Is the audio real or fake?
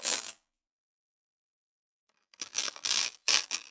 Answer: fake